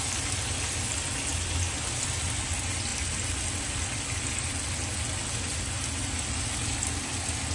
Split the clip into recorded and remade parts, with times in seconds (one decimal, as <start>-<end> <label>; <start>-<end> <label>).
0.0-7.5 recorded

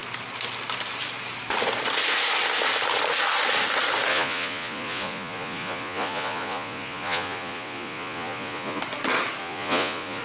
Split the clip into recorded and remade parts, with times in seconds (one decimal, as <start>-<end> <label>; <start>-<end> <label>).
0.0-4.1 recorded; 4.1-8.8 remade; 8.8-9.4 recorded; 9.4-10.2 remade

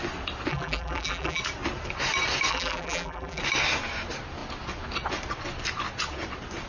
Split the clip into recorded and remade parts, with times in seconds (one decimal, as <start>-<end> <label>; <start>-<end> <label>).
0.0-0.5 recorded; 0.5-1.4 remade; 1.4-2.5 recorded; 2.5-3.4 remade; 3.4-6.7 recorded

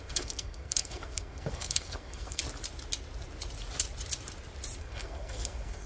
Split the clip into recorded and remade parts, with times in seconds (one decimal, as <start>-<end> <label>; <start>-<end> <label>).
0.0-2.4 remade; 2.4-4.8 recorded; 4.8-5.9 remade

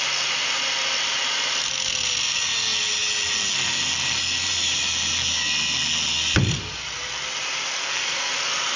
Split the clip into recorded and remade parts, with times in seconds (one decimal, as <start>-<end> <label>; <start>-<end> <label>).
0.0-7.8 recorded; 7.8-8.3 remade; 8.3-8.8 recorded

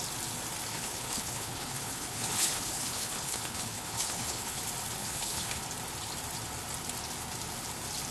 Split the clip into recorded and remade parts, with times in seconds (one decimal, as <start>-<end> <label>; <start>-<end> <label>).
0.0-0.7 recorded; 0.7-4.6 remade; 4.6-5.0 recorded; 5.0-5.6 remade; 5.6-8.1 recorded

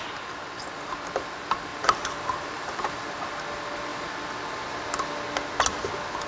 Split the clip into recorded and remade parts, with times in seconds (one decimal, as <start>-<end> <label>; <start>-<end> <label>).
0.0-1.7 recorded; 1.7-3.2 remade; 3.2-6.3 recorded

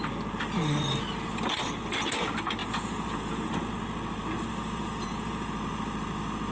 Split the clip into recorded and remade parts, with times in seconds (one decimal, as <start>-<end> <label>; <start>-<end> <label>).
0.0-2.6 recorded; 2.6-3.5 remade; 3.5-4.5 recorded; 4.5-5.5 remade; 5.5-6.5 recorded